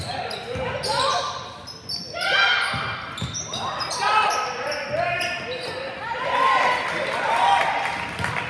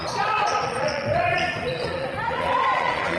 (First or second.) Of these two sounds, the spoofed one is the second